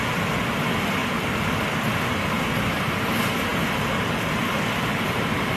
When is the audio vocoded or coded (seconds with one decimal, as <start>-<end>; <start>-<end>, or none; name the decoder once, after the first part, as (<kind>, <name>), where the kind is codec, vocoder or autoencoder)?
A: none